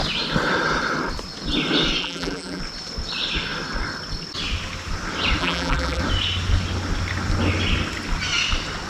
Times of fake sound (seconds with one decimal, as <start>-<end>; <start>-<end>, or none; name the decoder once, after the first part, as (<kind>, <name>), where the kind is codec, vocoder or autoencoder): 2.0-2.6 (vocoder, BigVGAN v2); 5.4-6.0